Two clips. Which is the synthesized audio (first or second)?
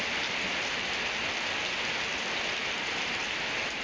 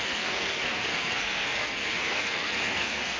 second